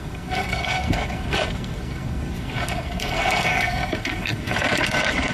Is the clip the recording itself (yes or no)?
no